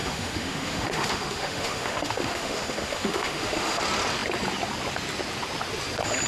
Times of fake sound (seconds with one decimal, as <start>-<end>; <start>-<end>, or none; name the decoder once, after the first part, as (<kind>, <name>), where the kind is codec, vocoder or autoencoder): 0.0-3.8 (autoencoder, DAC-VAE)